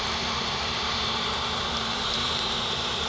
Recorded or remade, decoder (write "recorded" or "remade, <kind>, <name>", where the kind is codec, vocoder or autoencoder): remade, vocoder, BigVGAN v2